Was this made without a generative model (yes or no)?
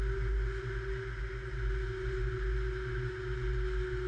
yes